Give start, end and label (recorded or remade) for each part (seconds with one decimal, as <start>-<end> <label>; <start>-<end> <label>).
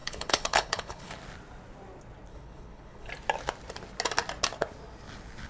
0.0-1.1 remade; 1.1-2.3 recorded; 2.3-3.1 remade; 3.1-5.5 recorded